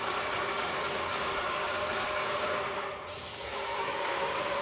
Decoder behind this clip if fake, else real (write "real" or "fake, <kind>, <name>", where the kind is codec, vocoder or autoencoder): fake, codec, DAC